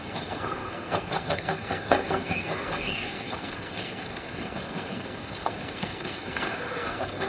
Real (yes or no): no